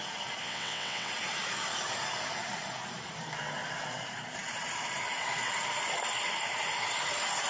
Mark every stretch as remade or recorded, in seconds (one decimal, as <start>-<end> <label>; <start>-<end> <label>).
0.0-0.4 recorded; 0.4-1.1 remade; 1.1-7.5 recorded

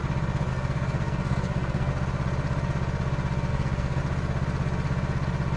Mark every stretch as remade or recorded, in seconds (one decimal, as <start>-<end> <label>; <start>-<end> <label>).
0.0-0.5 recorded; 0.5-1.9 remade; 1.9-3.5 recorded; 3.5-4.0 remade; 4.0-5.6 recorded

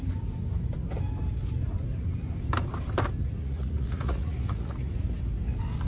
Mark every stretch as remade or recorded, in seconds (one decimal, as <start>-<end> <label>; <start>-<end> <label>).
0.0-3.2 recorded; 3.2-4.9 remade; 4.9-5.9 recorded

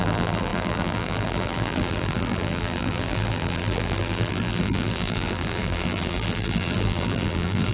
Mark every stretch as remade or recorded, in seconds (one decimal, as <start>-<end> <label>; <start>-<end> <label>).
0.0-7.7 remade

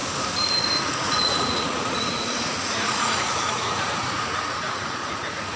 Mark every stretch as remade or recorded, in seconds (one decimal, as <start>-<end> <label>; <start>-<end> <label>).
0.0-0.7 recorded; 0.7-5.6 remade

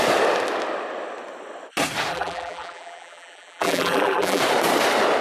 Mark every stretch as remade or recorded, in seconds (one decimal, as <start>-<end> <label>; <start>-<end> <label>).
0.0-2.1 recorded; 2.1-4.4 remade; 4.4-5.2 recorded

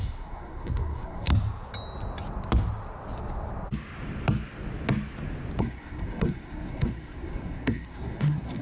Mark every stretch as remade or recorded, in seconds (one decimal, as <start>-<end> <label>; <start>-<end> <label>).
0.0-1.3 remade; 1.3-5.6 recorded; 5.6-8.6 remade

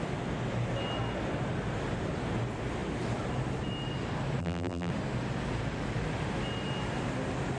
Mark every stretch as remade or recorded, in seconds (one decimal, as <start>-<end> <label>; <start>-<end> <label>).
0.0-4.4 recorded; 4.4-4.9 remade; 4.9-7.6 recorded